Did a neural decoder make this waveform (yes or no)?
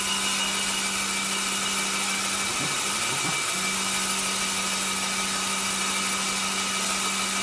no